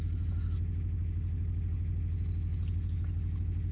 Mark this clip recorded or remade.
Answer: recorded